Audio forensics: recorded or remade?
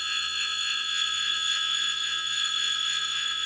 remade